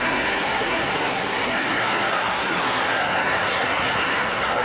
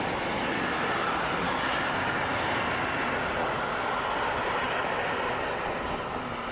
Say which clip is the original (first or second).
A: second